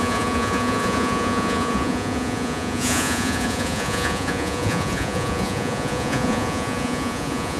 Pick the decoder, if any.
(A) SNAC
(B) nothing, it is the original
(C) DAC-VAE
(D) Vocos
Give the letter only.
D